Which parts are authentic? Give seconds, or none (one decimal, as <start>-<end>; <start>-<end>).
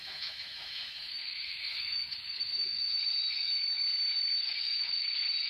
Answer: none